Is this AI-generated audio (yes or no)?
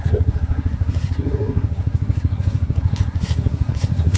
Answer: yes